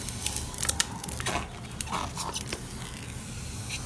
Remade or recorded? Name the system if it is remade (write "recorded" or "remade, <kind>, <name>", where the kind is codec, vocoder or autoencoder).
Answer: recorded